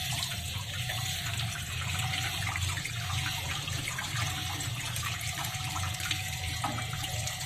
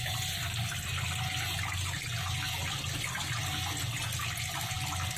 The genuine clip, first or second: second